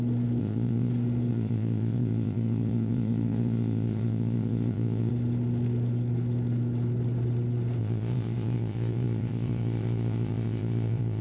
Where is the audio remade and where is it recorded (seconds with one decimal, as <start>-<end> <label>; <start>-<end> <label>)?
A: 0.0-0.4 recorded; 0.4-0.9 remade; 0.9-1.3 recorded; 1.3-5.1 remade; 5.1-7.8 recorded; 7.8-11.2 remade